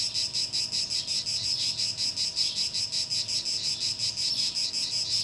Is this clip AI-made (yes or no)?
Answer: no